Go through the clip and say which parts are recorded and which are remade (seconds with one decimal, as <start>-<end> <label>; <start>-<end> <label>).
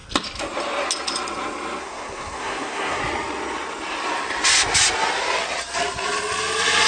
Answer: 0.0-1.8 recorded; 1.8-3.0 remade; 3.0-6.9 recorded